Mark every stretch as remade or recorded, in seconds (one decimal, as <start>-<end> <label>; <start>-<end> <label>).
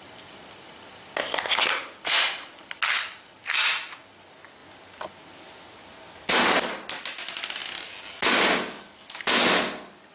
0.0-10.1 recorded